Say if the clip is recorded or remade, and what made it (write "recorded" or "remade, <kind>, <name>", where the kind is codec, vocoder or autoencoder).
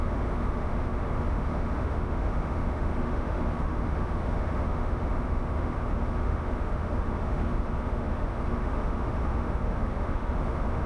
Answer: remade, autoencoder, DAC-VAE